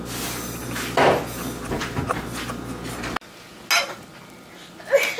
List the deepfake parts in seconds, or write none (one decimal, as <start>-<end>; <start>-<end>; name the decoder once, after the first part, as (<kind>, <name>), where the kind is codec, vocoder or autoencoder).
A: none